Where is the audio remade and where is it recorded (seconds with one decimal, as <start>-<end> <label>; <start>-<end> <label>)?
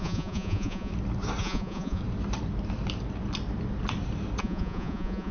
0.0-0.9 remade; 0.9-1.4 recorded; 1.4-2.0 remade; 2.0-4.4 recorded; 4.4-5.3 remade